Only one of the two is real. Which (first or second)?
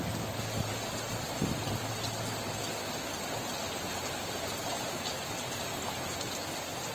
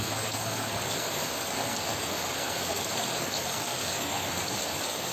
first